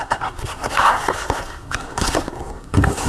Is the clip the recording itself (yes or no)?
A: no